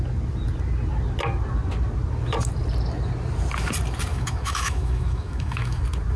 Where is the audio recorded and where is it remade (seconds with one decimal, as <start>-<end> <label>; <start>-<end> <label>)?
0.0-4.1 recorded; 4.1-5.8 remade; 5.8-6.2 recorded